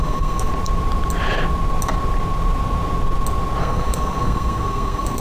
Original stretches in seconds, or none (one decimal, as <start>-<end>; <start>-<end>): 0.5-3.6